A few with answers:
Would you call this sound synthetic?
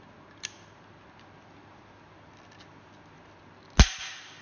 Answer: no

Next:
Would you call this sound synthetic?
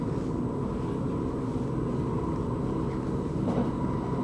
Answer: no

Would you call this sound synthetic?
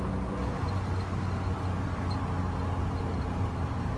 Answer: no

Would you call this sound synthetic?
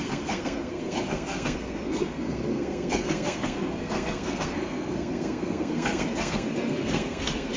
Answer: yes